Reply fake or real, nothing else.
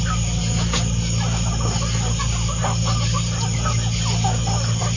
real